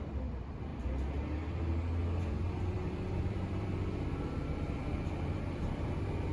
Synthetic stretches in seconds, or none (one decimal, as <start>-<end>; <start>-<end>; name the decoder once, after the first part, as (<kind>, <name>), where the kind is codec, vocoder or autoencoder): 2.3-6.3 (vocoder, BigVGAN v2)